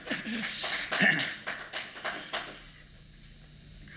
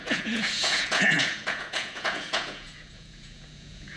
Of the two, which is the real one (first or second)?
first